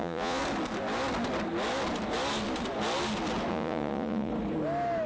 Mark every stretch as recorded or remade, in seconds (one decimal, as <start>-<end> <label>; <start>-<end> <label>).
0.0-0.4 remade; 0.4-3.5 recorded; 3.5-4.3 remade; 4.3-5.1 recorded